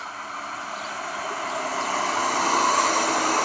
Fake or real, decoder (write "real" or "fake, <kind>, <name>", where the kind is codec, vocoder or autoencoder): real